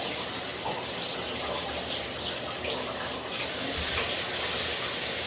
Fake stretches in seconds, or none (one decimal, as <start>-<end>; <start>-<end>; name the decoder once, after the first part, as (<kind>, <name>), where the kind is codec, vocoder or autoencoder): none

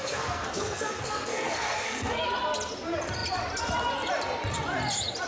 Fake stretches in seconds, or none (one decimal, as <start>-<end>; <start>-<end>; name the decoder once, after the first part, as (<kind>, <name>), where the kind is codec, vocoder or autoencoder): 0.0-2.2 (codec, SNAC)

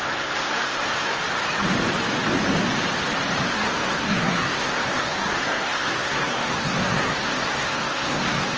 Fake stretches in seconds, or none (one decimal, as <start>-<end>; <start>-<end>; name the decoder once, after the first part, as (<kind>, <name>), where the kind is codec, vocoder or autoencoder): 0.0-1.2 (codec, SNAC); 3.4-8.6

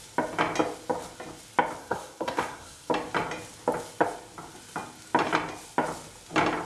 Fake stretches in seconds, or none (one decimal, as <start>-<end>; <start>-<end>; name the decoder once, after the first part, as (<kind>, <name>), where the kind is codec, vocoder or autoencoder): 1.8-2.9 (codec, SNAC)

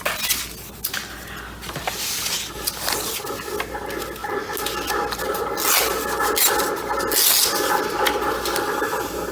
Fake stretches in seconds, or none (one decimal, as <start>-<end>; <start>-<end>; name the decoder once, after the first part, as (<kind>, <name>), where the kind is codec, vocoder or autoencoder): none

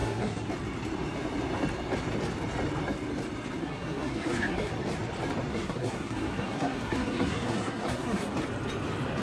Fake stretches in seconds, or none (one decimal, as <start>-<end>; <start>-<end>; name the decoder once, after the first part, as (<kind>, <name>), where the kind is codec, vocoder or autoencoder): 0.0-0.5 (codec, SNAC); 3.6-4.7; 5.5-8.3